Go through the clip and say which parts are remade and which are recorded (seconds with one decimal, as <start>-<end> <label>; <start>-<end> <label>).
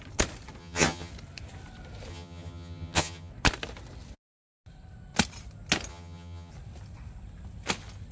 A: 0.0-0.6 recorded; 0.6-1.1 remade; 1.1-2.1 recorded; 2.1-3.3 remade; 3.3-5.9 recorded; 5.9-6.5 remade; 6.5-8.1 recorded